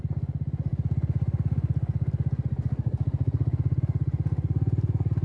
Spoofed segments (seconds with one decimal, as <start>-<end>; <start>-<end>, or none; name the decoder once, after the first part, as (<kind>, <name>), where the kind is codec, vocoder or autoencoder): none